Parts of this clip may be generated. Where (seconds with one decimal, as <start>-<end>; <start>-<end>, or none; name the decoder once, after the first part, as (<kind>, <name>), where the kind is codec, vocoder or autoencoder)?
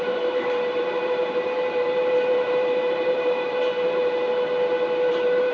0.0-4.3 (vocoder, BigVGAN v2); 5.1-5.5